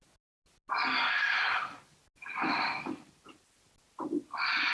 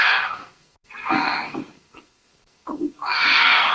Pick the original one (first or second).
first